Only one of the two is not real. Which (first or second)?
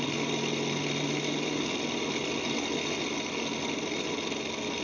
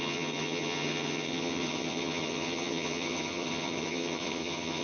second